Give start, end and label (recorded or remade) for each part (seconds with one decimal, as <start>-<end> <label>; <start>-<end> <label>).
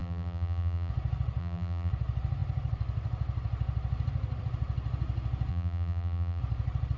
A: 0.0-0.9 remade; 0.9-1.4 recorded; 1.4-1.9 remade; 1.9-5.5 recorded; 5.5-6.4 remade; 6.4-7.0 recorded